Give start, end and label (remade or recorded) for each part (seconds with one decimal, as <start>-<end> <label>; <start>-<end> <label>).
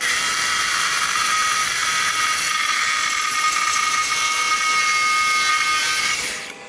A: 0.0-6.7 recorded